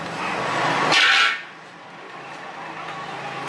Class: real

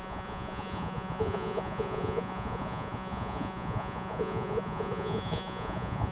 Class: fake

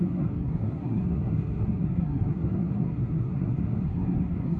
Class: fake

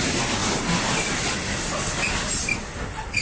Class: real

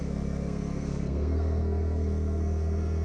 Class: fake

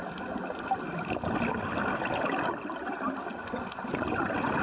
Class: fake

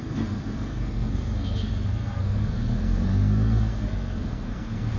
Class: fake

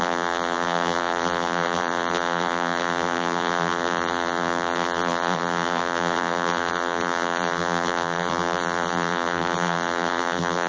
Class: fake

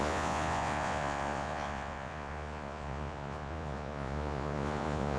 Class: fake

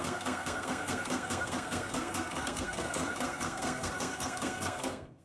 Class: fake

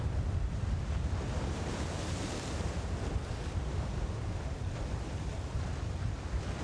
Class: real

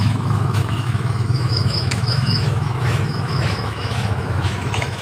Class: fake